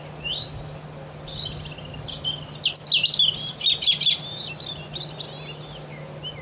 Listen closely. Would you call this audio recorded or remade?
recorded